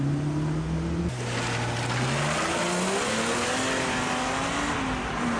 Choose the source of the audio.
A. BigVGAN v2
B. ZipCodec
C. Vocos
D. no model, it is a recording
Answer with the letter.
D